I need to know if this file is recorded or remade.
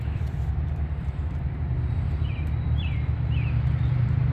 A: remade